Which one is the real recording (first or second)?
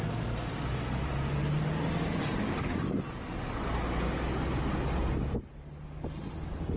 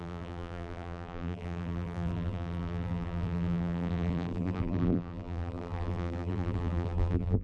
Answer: first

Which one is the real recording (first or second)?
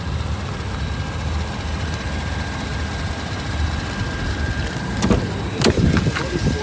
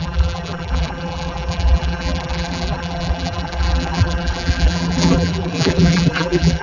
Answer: first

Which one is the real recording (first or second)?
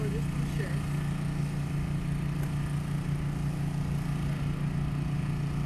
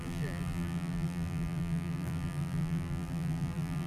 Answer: first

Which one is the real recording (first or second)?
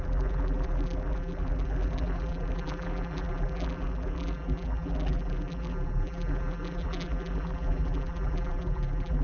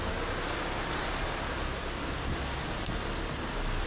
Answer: second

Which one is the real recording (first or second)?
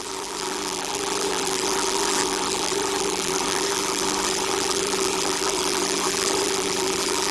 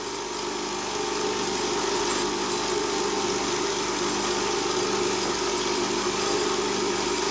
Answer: second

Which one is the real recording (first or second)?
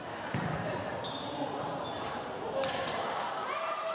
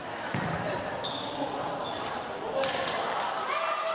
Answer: second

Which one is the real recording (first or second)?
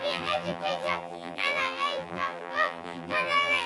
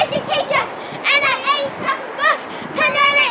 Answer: second